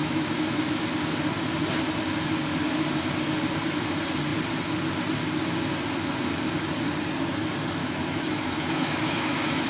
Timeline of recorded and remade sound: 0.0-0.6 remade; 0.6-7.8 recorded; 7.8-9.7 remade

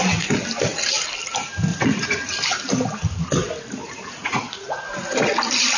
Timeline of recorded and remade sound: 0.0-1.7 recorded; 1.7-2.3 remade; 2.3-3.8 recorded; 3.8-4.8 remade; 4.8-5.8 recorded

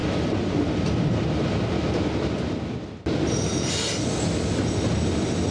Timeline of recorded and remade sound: 0.0-1.4 remade; 1.4-5.5 recorded